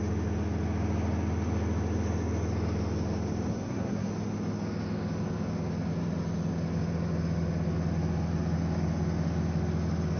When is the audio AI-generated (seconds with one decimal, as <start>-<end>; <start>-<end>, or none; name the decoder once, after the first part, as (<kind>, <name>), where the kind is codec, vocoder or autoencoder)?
3.5-4.1 (codec, SNAC)